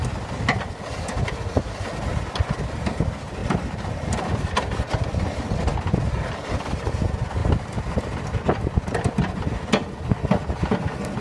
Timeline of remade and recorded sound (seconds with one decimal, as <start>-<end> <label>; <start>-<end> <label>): 0.0-3.4 recorded; 3.4-4.5 remade; 4.5-11.2 recorded